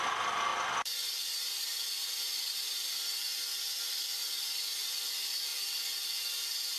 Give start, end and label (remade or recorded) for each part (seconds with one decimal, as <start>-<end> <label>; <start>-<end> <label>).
0.0-6.8 remade